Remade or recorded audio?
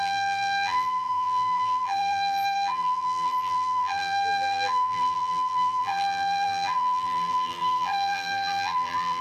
remade